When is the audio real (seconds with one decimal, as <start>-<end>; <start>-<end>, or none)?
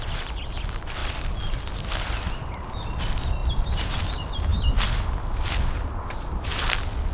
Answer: 0.0-7.1